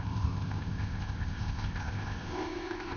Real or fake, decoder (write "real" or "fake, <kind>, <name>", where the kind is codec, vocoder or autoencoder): fake, codec, ZipCodec